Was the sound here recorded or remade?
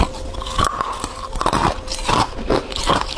recorded